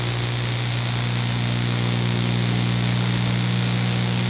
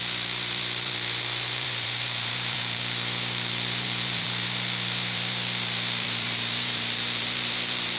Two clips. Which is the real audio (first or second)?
first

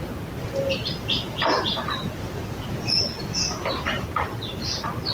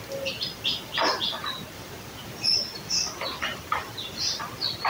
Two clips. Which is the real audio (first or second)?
first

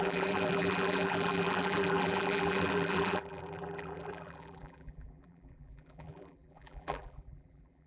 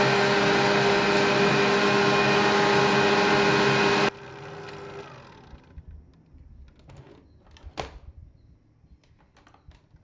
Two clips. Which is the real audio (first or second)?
second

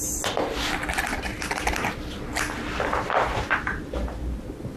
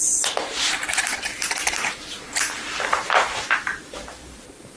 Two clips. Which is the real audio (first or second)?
first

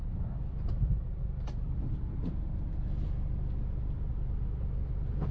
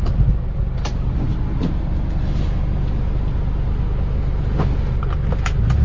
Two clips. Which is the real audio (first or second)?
second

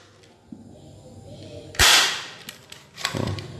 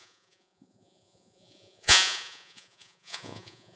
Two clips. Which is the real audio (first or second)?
first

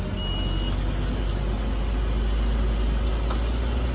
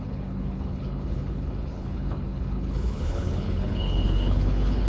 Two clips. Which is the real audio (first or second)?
first